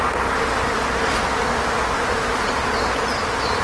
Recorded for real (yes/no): yes